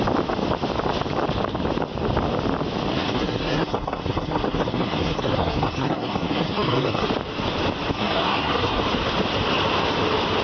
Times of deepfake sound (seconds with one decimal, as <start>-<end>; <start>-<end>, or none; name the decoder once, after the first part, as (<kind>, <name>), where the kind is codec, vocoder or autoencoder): 2.9-7.1 (codec, SNAC); 7.9-8.8